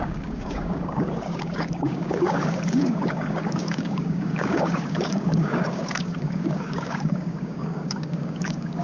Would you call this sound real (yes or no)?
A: no